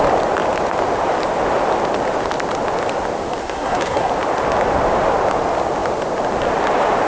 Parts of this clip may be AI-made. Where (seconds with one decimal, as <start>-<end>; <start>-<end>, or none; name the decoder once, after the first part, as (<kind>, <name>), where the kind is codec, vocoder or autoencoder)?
3.4-4.1 (codec, SNAC)